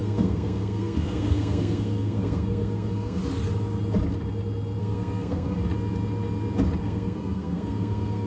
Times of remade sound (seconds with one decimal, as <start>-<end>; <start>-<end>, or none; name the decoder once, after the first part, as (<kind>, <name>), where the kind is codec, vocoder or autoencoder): 0.0-3.2 (codec, SNAC); 4.8-5.7; 6.8-8.3